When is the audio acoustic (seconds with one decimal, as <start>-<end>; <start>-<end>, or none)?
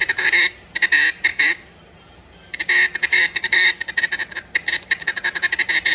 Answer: 0.0-1.3; 1.8-3.1; 3.8-5.9